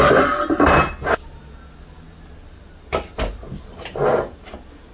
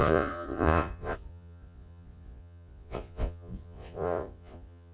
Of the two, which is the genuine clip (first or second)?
first